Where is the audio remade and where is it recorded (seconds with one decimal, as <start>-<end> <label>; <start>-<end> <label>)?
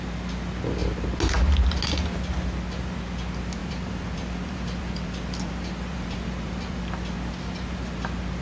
0.0-3.6 recorded; 3.6-6.8 remade; 6.8-8.4 recorded